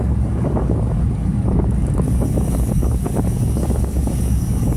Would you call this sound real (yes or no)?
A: no